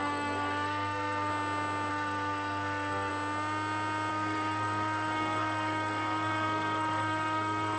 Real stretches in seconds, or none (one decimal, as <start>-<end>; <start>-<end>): 1.3-1.9; 3.1-4.1